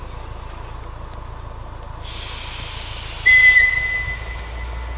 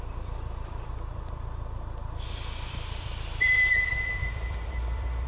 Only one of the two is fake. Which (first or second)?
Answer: second